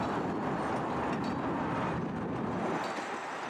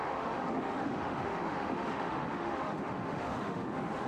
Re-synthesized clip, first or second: second